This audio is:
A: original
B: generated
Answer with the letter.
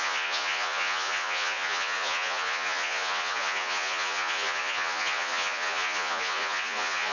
B